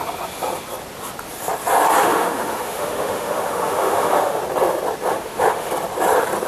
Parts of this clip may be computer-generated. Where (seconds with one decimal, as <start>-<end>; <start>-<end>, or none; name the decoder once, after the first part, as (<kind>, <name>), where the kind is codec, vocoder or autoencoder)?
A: 2.0-4.4 (autoencoder, DAC-VAE); 5.1-5.7